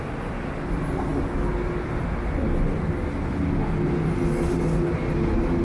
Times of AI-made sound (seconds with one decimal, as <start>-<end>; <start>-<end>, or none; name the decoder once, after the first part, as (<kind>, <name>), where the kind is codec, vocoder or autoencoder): none